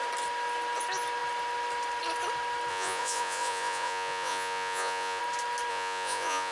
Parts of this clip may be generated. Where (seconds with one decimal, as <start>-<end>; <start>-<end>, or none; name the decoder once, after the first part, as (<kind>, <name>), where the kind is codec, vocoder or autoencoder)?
2.7-5.2 (vocoder, Vocos); 5.7-6.5